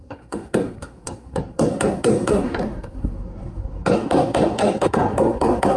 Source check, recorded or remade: remade